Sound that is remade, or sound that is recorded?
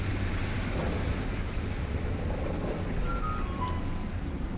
recorded